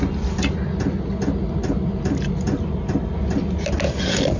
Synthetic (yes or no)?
no